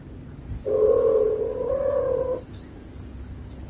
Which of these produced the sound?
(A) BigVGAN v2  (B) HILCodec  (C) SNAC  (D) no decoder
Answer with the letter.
D